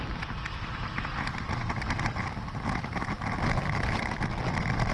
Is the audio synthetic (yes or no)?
no